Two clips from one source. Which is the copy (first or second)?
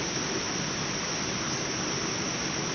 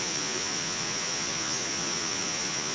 second